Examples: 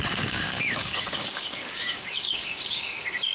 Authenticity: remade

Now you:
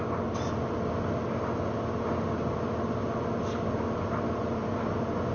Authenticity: recorded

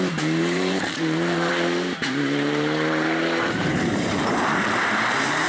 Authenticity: remade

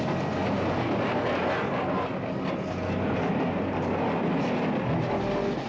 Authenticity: recorded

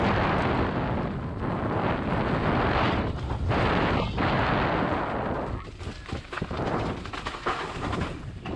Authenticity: recorded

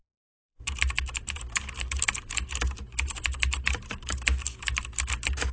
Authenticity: remade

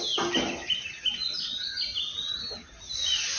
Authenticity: recorded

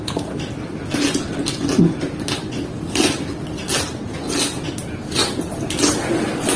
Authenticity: recorded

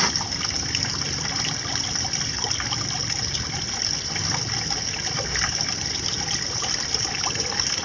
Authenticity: recorded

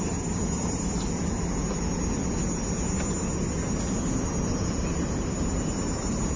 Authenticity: recorded